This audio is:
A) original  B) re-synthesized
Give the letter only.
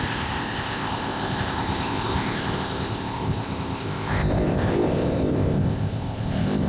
B